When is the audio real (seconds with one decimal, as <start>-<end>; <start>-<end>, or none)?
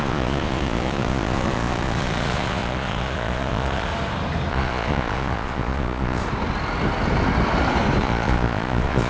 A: 3.9-4.5; 6.2-8.0